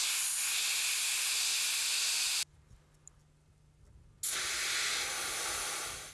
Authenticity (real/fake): real